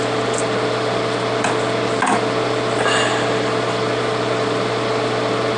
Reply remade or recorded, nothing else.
recorded